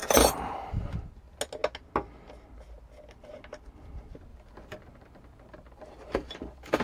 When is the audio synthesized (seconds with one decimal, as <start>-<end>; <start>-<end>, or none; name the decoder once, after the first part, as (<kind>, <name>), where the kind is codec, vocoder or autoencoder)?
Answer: 0.0-0.7 (vocoder, BigVGAN v2); 4.3-6.8